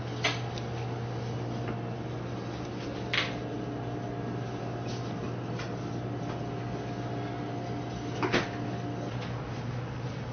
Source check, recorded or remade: recorded